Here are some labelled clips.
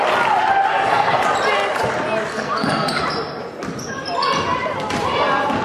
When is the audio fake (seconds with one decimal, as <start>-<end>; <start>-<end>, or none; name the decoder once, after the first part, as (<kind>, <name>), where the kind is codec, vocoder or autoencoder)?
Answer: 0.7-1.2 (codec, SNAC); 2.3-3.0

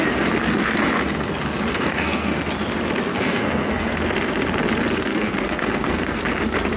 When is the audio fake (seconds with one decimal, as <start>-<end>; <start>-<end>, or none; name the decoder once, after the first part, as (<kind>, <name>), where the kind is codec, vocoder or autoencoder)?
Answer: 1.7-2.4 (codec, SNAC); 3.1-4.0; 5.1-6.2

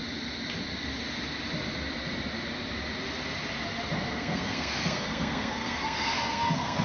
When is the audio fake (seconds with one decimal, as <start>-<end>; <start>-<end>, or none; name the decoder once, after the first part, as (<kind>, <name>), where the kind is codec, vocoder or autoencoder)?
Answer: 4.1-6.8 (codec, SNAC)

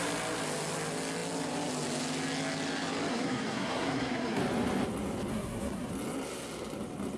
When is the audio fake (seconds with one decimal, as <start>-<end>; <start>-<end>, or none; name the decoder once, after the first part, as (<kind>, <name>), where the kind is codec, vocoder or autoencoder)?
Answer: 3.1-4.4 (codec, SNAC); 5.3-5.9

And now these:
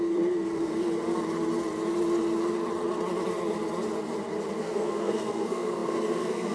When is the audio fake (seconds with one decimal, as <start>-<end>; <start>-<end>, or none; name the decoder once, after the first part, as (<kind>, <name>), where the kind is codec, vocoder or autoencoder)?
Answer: 0.0-0.7 (codec, SNAC); 4.6-6.5